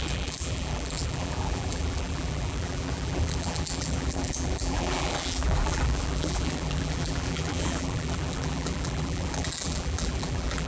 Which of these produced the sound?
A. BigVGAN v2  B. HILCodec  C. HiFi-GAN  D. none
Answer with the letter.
A